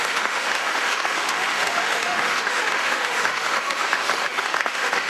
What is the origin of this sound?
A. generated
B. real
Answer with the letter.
A